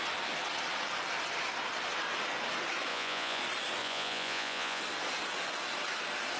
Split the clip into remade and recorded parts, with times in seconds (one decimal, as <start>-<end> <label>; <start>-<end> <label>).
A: 0.0-2.9 recorded; 2.9-3.4 remade; 3.4-3.8 recorded; 3.8-4.8 remade; 4.8-6.4 recorded